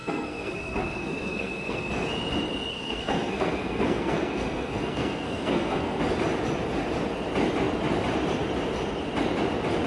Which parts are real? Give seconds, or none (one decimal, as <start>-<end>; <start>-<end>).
1.9-2.7; 6.0-9.9